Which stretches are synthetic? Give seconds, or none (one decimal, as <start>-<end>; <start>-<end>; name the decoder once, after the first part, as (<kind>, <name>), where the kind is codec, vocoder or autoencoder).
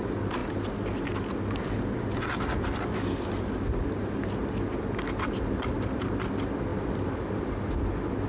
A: 6.7-7.5 (vocoder, BigVGAN v2)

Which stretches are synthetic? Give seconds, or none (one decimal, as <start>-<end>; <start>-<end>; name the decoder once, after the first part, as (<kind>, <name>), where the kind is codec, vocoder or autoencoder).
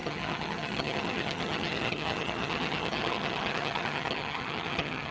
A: 0.0-5.1 (vocoder, HiFi-GAN)